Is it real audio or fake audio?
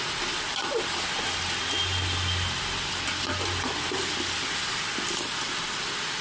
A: real